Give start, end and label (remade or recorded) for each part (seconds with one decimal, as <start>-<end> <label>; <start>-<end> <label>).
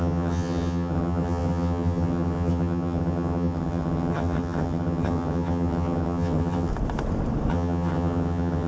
0.0-6.7 remade; 6.7-7.5 recorded; 7.5-8.7 remade